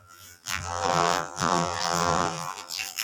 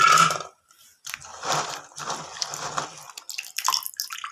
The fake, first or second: first